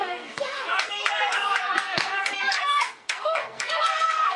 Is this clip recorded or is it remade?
remade